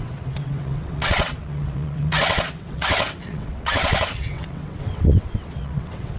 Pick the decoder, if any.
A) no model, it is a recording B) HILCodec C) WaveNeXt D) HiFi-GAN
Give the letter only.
C